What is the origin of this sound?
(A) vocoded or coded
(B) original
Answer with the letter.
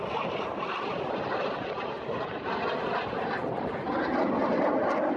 B